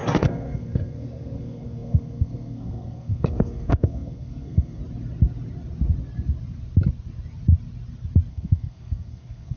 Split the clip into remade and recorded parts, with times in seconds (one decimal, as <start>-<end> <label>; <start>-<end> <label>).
0.0-4.8 remade; 4.8-8.3 recorded; 8.3-9.6 remade